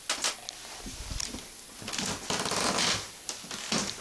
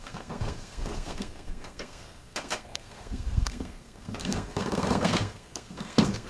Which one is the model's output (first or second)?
second